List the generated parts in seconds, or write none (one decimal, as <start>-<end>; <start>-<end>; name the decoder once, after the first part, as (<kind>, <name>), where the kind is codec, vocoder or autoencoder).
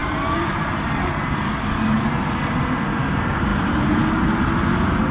0.0-1.4 (vocoder, BigVGAN v2); 3.5-4.0